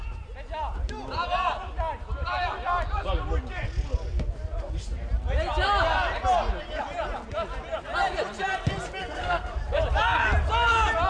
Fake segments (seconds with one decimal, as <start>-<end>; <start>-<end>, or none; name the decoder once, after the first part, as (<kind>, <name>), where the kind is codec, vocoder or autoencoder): 9.0-9.6 (codec, SNAC)